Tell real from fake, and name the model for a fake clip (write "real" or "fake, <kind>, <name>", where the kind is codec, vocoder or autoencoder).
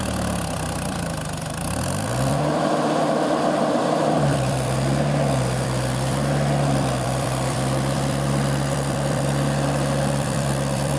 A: fake, vocoder, BigVGAN v2